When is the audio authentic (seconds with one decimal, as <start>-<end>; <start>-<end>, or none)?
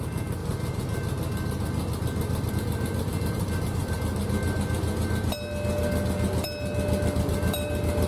0.4-2.5; 4.1-7.2